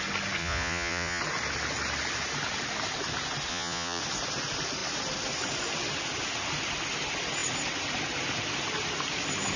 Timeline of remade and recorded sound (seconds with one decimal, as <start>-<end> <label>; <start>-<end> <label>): 0.0-0.4 recorded; 0.4-1.2 remade; 1.2-3.5 recorded; 3.5-4.0 remade; 4.0-9.6 recorded